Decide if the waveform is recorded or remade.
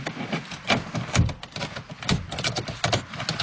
recorded